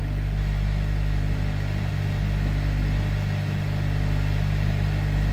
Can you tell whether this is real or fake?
real